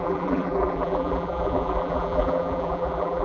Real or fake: fake